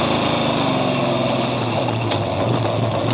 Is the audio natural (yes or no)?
yes